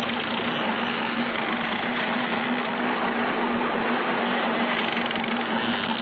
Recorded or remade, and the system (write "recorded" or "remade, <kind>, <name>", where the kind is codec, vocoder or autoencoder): recorded